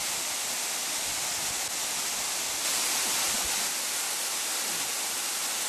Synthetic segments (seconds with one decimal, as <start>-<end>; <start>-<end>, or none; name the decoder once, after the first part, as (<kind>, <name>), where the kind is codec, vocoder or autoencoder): none